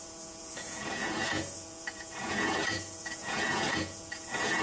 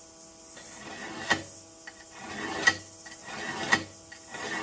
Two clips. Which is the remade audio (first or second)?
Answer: first